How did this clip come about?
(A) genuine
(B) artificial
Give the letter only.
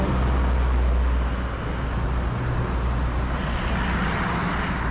A